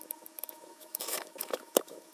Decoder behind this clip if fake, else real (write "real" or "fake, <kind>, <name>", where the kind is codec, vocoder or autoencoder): fake, autoencoder, DAC-VAE